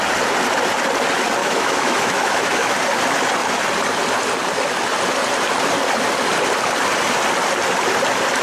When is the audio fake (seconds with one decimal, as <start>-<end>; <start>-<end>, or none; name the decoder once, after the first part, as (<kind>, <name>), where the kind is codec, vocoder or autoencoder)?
1.4-2.7 (autoencoder, DAC-VAE)